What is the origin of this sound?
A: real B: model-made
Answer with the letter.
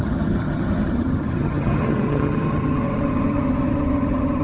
B